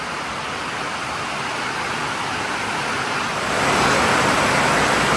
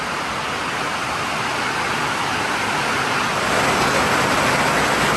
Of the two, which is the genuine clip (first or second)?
second